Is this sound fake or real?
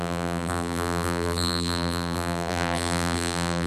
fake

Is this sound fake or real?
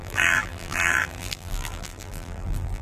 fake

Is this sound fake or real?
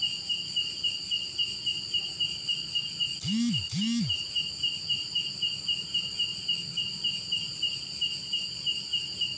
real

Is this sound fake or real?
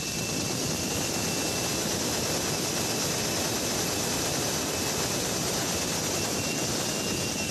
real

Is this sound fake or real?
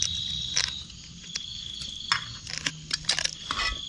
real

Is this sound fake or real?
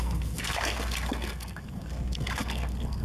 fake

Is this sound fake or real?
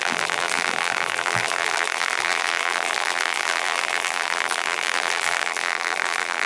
fake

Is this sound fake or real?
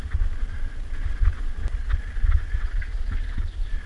real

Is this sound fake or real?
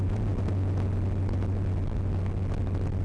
real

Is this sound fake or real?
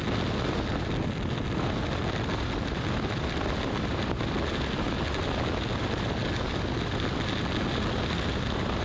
real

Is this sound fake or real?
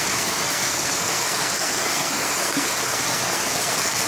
fake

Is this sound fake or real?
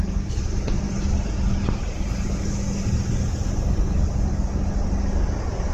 real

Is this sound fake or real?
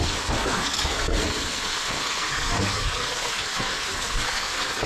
fake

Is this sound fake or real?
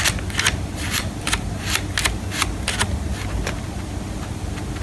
real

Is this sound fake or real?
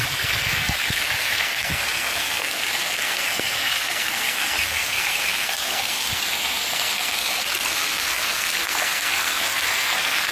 fake